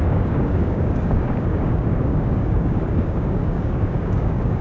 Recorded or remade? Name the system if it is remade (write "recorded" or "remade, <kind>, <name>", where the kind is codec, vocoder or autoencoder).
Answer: remade, codec, DAC